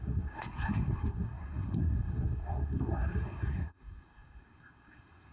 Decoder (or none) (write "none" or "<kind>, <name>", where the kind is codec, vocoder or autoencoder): codec, SNAC